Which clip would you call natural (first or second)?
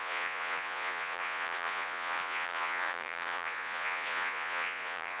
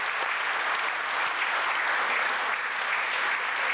second